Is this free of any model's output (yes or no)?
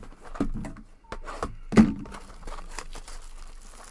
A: yes